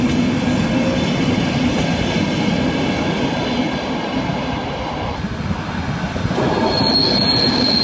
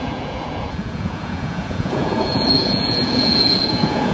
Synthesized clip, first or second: second